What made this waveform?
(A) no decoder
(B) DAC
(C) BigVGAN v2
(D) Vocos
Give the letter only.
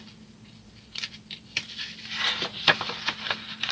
C